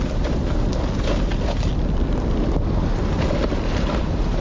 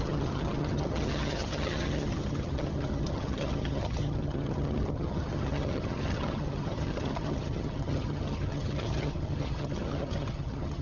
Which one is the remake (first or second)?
second